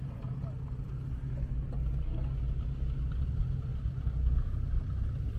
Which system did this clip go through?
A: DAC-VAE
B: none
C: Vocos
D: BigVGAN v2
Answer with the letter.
B